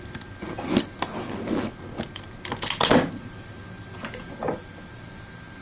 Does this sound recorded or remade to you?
recorded